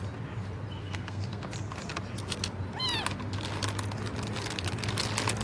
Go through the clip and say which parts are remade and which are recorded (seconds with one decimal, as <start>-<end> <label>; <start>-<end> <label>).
0.0-0.8 recorded; 0.8-1.4 remade; 1.4-5.4 recorded